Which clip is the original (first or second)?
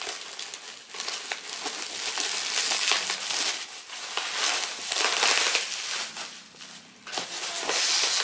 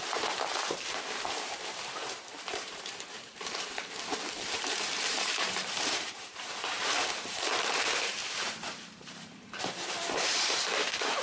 first